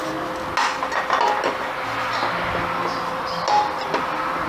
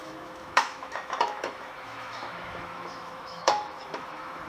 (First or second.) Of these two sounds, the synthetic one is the second